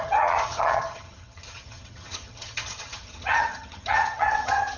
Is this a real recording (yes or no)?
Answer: no